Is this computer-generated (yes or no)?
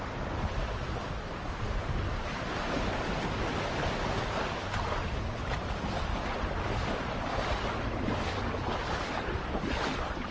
no